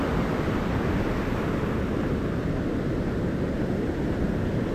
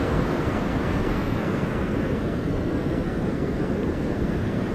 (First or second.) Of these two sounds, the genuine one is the first